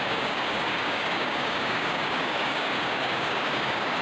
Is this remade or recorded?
remade